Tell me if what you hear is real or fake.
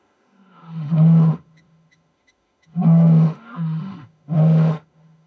fake